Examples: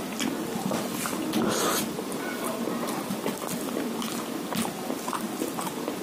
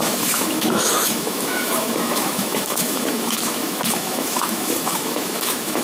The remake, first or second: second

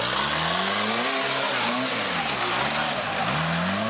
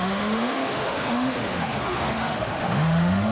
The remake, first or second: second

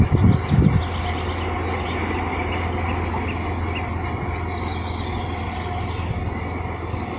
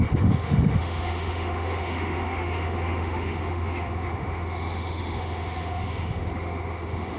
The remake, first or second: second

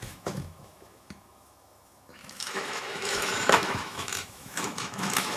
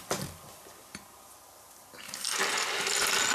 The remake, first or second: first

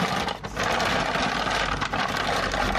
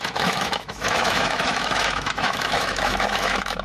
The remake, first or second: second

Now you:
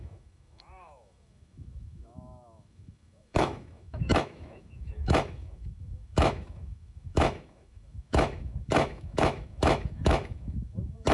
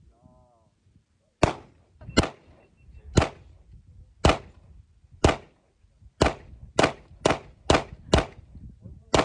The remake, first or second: first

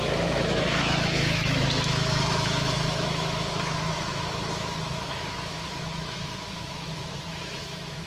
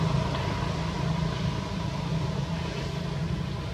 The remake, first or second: first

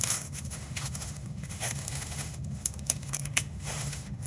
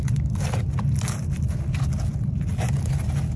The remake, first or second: first